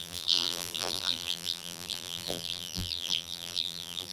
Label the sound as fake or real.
fake